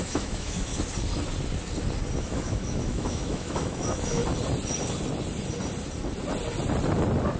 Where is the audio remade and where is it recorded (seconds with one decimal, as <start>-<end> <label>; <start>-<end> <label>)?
0.0-0.7 remade; 0.7-2.2 recorded; 2.2-4.2 remade; 4.2-7.4 recorded